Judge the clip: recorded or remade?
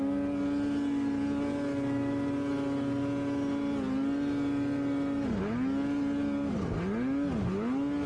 recorded